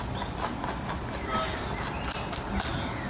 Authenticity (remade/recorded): recorded